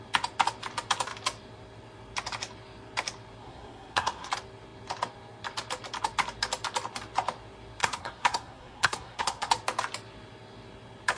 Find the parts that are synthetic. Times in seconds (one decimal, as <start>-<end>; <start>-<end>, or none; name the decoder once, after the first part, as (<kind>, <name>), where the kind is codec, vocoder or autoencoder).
3.4-4.3 (codec, SNAC); 7.8-9.5